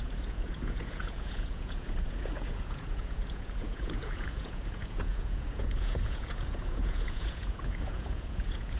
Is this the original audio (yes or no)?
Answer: no